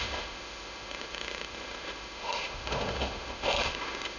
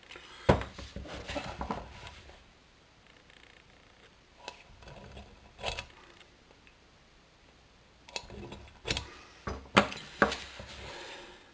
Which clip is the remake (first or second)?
first